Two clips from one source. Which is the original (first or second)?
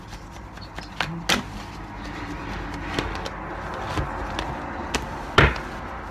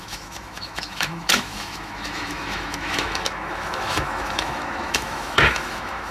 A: first